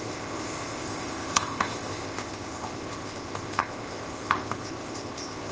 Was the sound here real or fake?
fake